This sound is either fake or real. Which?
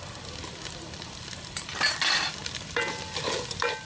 real